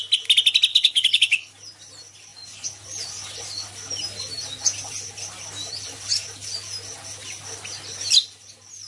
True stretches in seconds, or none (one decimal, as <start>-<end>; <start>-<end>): 0.0-0.7; 1.5-8.9